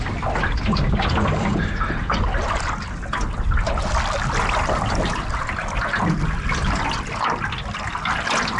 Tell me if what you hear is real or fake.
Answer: real